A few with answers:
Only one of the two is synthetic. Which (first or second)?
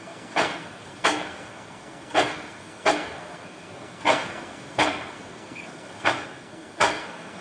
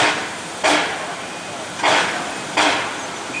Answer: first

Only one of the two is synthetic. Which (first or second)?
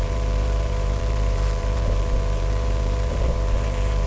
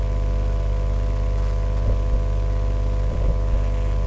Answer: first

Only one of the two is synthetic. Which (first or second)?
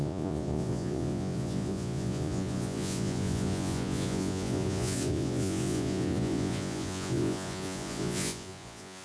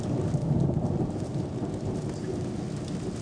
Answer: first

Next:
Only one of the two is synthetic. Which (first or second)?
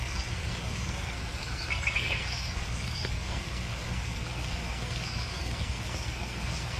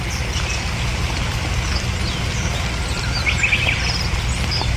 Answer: first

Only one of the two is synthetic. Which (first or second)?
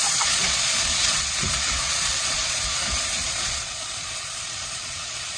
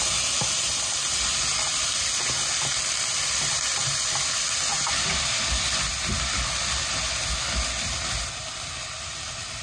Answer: first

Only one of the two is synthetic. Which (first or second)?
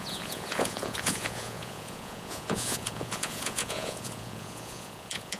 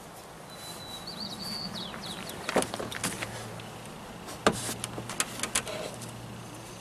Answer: first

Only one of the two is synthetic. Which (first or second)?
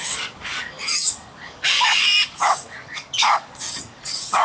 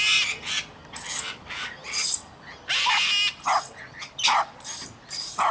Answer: first